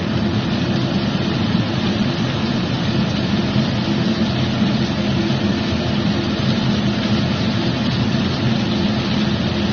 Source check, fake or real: real